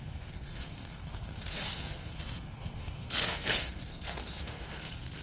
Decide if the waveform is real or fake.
fake